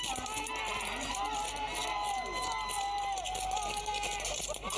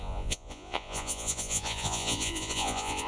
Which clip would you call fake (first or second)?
second